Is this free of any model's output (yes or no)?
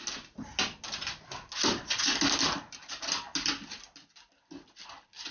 yes